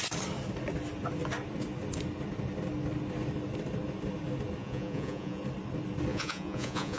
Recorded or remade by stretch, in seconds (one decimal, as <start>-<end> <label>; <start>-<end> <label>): 0.0-4.6 recorded; 4.6-5.4 remade; 5.4-6.1 recorded; 6.1-7.0 remade